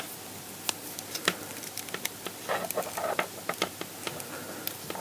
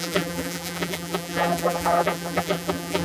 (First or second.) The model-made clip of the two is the second